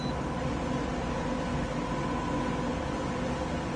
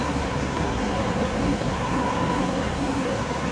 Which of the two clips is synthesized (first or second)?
second